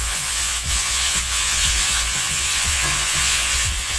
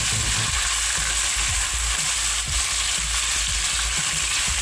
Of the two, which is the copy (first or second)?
first